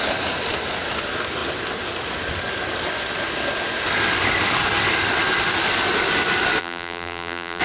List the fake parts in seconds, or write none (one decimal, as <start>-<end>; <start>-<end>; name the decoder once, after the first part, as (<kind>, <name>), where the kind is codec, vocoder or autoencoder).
6.6-7.6 (vocoder, BigVGAN v2)